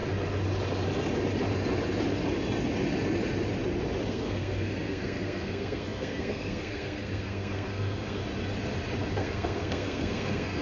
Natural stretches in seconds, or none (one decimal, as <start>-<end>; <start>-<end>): 0.0-4.1; 8.2-9.1